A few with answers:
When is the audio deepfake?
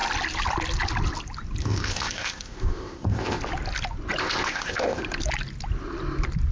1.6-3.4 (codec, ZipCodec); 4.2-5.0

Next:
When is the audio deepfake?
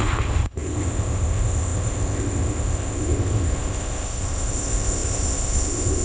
0.0-6.0 (codec, ZipCodec)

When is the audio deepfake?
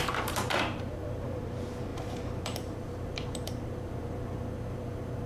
0.0-1.4 (vocoder, BigVGAN v2); 1.9-5.3